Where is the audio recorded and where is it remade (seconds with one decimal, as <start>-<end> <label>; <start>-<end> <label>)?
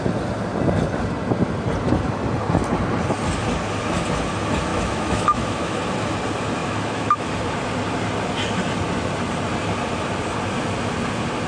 0.0-4.7 recorded; 4.7-5.8 remade; 5.8-6.6 recorded; 6.6-7.3 remade; 7.3-11.5 recorded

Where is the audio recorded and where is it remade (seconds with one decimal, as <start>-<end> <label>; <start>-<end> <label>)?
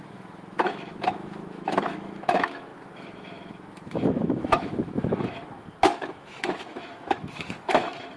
0.0-8.2 remade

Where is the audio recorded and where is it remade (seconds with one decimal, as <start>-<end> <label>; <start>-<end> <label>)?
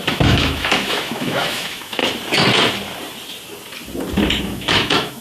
0.0-2.0 remade; 2.0-4.4 recorded; 4.4-5.2 remade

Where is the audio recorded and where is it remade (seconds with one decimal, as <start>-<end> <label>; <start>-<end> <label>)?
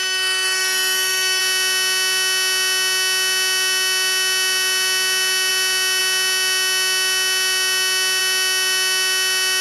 0.0-1.4 remade; 1.4-9.6 recorded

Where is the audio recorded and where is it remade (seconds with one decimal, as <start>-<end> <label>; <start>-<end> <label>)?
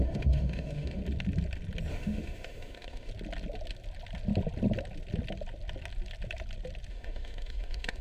0.0-1.0 remade; 1.0-1.9 recorded; 1.9-3.1 remade; 3.1-6.9 recorded; 6.9-8.0 remade